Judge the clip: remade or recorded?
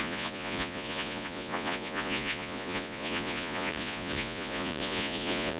remade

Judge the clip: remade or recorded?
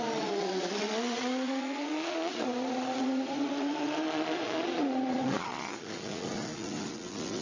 remade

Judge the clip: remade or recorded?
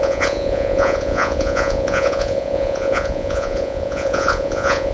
remade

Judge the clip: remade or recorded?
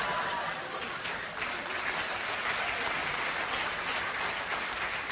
recorded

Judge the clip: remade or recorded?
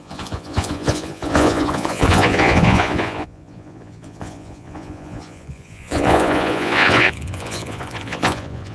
remade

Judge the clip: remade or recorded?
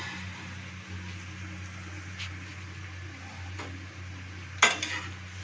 recorded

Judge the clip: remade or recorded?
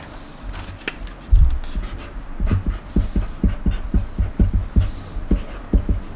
recorded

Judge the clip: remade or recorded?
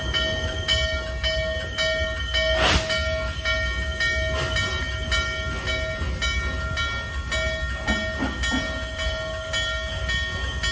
recorded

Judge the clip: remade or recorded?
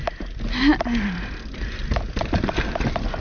recorded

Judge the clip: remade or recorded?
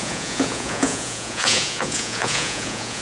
remade